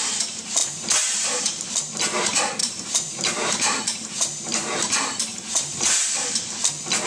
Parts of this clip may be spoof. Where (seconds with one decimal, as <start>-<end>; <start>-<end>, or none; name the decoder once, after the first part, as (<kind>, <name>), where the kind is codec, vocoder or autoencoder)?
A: 0.6-1.9 (vocoder, BigVGAN v2); 2.6-6.1